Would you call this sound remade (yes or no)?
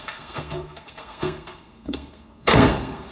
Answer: yes